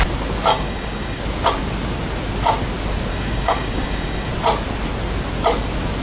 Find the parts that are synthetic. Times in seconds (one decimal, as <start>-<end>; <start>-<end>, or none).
0.5-1.2; 3.1-4.3